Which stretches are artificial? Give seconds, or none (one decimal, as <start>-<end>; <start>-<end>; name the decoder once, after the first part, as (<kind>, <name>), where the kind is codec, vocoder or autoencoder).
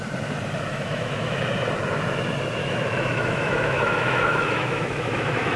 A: 0.7-1.4 (autoencoder, DAC-VAE); 2.6-5.6